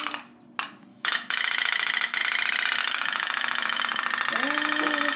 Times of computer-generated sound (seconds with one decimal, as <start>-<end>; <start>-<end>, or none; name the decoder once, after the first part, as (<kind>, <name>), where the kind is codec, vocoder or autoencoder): 0.9-2.2 (autoencoder, DAC-VAE); 2.8-3.8